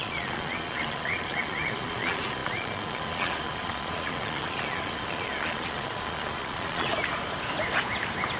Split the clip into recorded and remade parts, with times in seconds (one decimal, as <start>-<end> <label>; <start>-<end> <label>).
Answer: 0.0-6.9 remade; 6.9-8.4 recorded